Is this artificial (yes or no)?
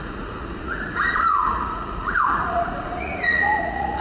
yes